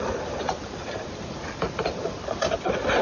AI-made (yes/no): no